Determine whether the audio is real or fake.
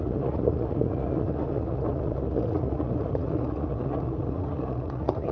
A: fake